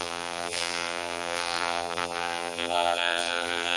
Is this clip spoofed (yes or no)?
yes